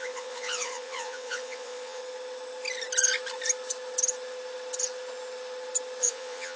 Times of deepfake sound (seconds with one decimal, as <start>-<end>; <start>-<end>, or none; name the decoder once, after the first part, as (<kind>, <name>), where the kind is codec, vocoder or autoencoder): 0.0-2.0 (vocoder, Vocos); 6.0-6.6